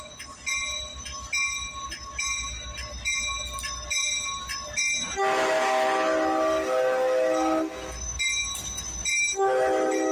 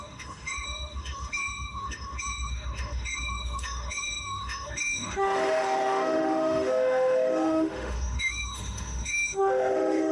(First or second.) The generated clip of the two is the second